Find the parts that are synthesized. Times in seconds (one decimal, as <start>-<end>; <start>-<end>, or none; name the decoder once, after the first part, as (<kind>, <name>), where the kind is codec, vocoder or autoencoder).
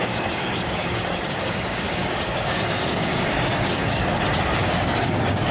0.0-5.5 (codec, DAC)